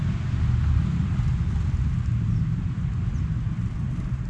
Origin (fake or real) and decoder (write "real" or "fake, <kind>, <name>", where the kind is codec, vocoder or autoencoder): real